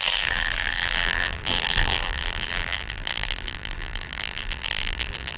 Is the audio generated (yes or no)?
yes